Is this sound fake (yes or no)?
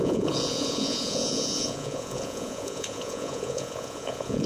yes